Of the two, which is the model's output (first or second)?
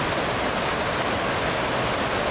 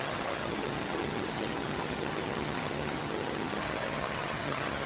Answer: second